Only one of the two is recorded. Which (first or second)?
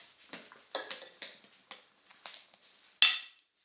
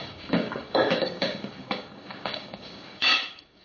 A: first